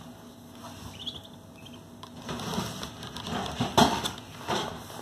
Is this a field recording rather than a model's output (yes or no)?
yes